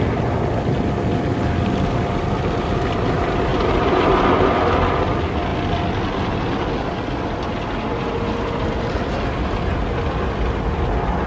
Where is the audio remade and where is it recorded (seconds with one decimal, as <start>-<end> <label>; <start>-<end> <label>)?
0.0-3.5 recorded; 3.5-4.2 remade; 4.2-11.3 recorded